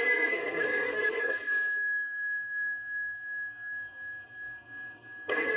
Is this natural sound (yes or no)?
no